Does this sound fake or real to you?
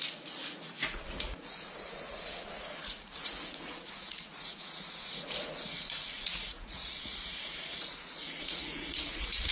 fake